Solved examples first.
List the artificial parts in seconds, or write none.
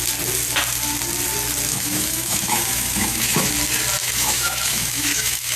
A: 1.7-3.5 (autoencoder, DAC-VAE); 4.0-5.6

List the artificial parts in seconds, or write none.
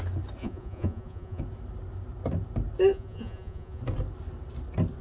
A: 0.4-1.4 (vocoder, Vocos); 2.9-3.8